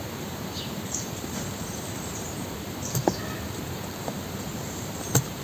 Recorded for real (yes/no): no